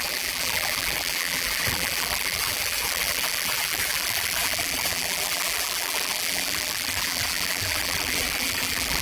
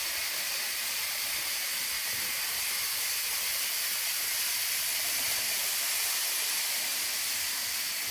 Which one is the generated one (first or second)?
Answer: first